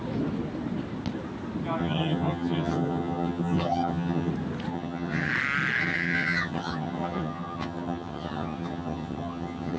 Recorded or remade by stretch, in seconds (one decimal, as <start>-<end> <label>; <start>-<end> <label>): 0.0-1.8 recorded; 1.8-4.3 remade; 4.3-4.7 recorded; 4.7-5.3 remade; 5.3-5.8 recorded; 5.8-9.8 remade